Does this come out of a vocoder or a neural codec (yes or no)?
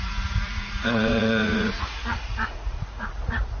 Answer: yes